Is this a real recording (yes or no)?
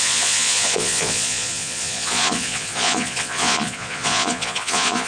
no